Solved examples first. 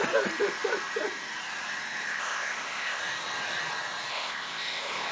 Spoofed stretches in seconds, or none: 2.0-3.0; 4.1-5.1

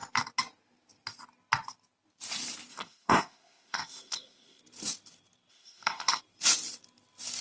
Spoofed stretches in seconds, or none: 2.7-4.6; 5.5-6.2

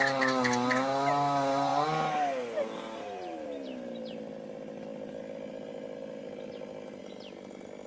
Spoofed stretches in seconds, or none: none

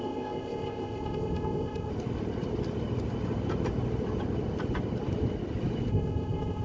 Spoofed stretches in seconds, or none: 0.0-1.9; 5.9-6.6

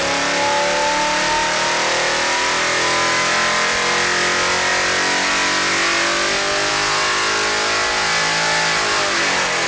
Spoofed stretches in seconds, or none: none

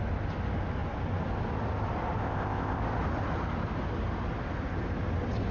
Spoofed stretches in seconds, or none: 2.2-2.8

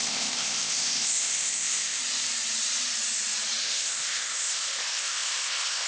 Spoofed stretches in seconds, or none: 0.0-2.0; 3.6-5.9